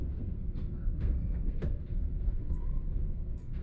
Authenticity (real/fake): fake